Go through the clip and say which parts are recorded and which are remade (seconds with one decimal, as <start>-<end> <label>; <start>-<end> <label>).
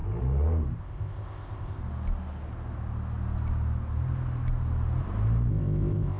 0.0-0.8 recorded; 0.8-1.8 remade; 1.8-5.5 recorded; 5.5-6.2 remade